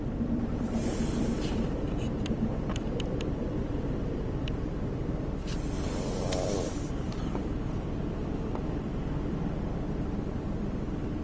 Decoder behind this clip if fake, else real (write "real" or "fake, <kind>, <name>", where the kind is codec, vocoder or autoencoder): fake, vocoder, BigVGAN v2